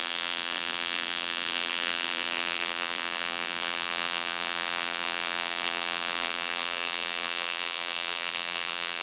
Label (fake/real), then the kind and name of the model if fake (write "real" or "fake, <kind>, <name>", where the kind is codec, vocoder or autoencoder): fake, vocoder, BigVGAN v2